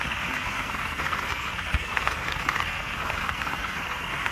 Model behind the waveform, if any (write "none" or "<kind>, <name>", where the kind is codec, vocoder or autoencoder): codec, SNAC